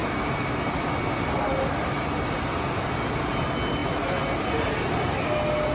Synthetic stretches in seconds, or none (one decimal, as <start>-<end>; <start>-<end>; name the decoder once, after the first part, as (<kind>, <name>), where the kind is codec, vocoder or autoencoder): none